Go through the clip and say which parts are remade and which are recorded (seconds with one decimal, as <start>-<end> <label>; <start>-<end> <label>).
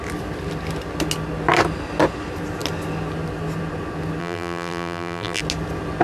0.0-4.2 recorded; 4.2-5.4 remade; 5.4-6.0 recorded